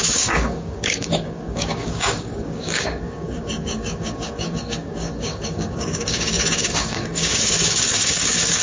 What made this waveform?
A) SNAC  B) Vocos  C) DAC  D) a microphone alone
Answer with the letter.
C